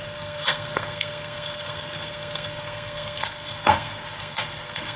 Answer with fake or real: fake